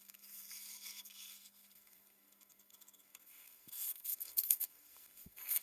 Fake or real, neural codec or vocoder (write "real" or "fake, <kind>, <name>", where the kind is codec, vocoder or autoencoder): fake, codec, SNAC